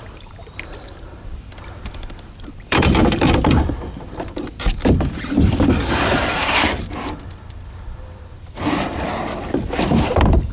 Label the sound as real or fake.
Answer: fake